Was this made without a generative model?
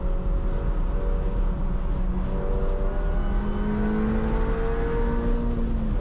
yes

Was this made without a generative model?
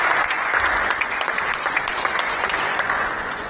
no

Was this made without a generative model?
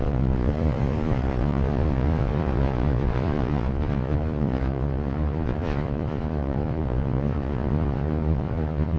no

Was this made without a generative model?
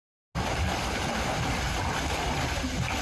yes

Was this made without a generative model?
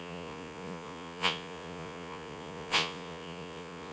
no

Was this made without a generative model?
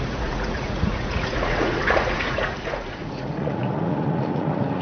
no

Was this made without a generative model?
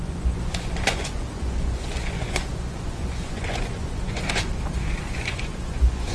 no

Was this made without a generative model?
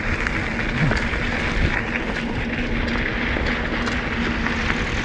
yes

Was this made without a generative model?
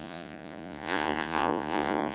no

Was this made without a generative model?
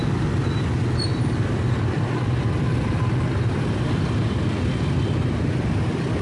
yes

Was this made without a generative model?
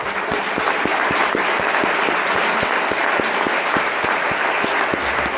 yes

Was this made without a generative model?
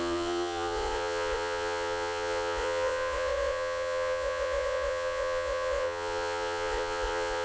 no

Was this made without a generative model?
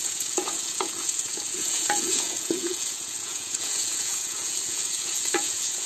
no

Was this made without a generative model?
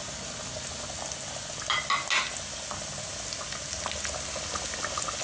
yes